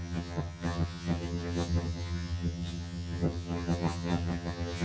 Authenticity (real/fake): fake